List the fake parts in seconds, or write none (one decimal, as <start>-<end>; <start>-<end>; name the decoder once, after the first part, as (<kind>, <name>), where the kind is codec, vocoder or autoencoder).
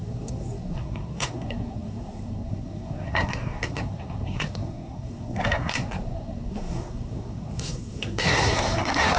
0.0-9.2 (codec, SNAC)